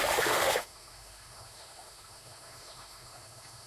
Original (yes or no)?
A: no